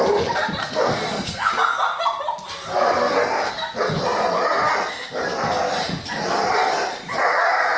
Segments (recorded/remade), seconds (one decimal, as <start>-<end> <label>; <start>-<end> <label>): 0.0-0.6 recorded; 0.6-1.5 remade; 1.5-2.7 recorded; 2.7-3.5 remade; 3.5-7.8 recorded